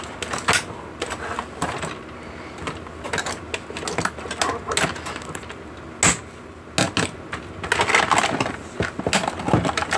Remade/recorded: recorded